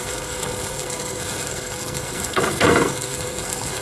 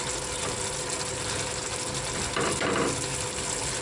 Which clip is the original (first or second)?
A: second